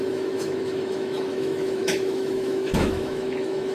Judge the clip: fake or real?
fake